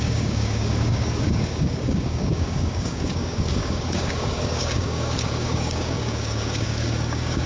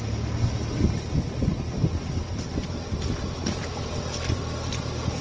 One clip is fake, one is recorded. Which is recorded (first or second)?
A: second